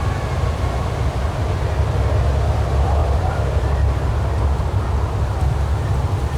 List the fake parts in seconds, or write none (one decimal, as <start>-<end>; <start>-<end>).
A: 3.0-4.1